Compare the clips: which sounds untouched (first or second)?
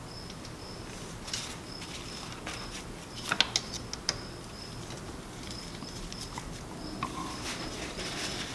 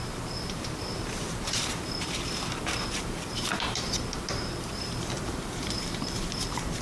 first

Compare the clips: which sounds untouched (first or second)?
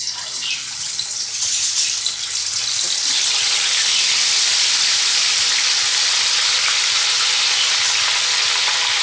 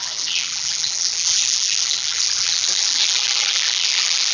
first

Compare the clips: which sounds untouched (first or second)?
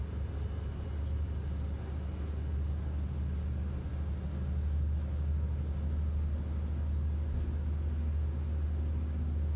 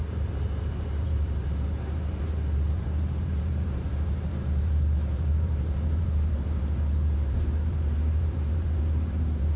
first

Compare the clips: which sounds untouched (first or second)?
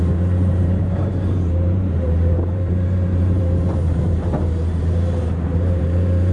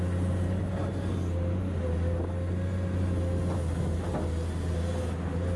second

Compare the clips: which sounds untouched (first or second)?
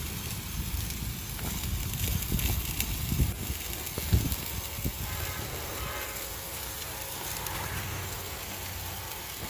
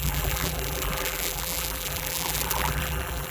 first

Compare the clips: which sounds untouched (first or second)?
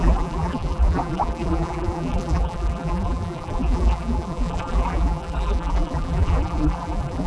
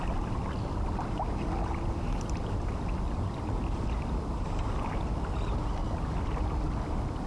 second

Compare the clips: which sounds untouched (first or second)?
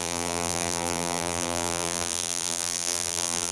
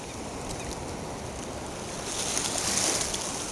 second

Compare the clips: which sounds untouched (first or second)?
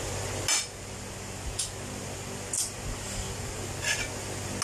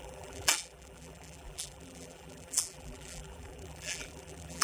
first